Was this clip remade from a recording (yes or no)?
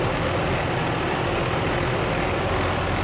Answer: no